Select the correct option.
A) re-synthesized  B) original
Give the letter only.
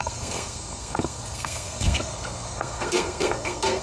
A